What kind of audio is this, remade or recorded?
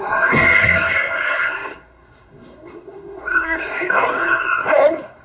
remade